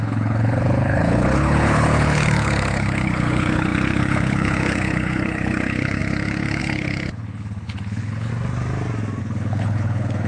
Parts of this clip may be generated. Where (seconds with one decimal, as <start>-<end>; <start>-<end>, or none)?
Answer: 0.0-8.3; 9.2-10.3